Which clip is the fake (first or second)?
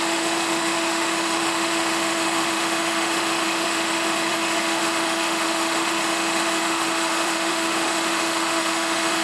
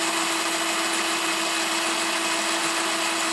first